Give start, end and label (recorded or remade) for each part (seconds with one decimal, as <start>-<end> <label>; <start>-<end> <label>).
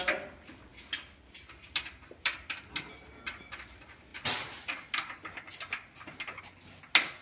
0.0-7.2 recorded